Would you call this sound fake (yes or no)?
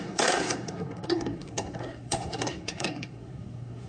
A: yes